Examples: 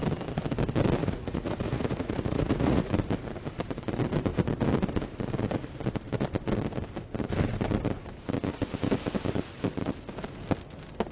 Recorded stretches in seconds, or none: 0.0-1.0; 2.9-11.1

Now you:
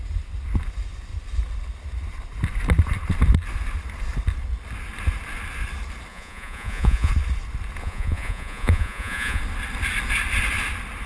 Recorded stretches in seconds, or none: 0.0-6.1; 7.1-7.8; 9.4-11.1

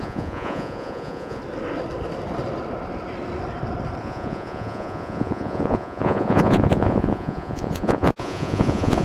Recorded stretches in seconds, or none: 1.4-4.0

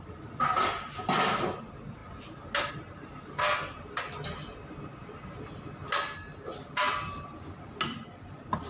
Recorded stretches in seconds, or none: 0.0-8.7

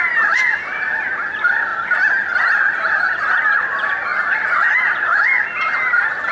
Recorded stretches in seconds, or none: 0.0-6.3